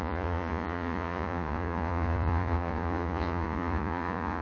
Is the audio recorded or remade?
remade